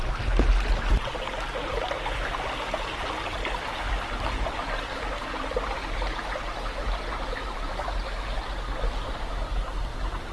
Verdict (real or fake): real